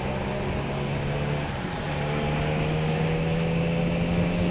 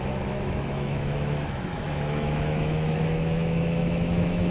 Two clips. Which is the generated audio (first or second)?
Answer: second